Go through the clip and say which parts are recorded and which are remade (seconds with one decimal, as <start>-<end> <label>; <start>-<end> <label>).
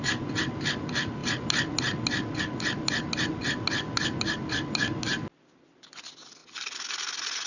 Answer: 0.0-7.5 recorded